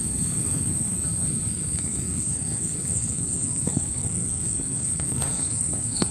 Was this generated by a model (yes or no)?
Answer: yes